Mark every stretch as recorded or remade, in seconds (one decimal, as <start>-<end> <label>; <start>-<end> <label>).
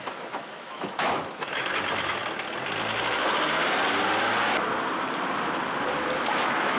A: 0.0-2.2 remade; 2.2-6.3 recorded; 6.3-6.8 remade